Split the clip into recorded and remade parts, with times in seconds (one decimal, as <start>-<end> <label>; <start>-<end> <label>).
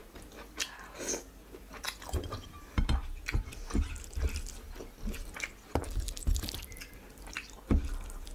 0.0-3.0 recorded; 3.0-3.7 remade; 3.7-8.3 recorded